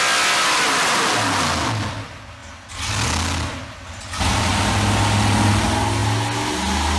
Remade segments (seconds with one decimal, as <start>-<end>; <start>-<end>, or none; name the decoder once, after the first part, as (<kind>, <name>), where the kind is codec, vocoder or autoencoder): none